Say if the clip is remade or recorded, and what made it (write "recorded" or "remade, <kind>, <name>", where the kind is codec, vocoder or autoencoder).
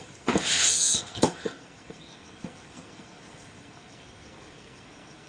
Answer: remade, codec, SNAC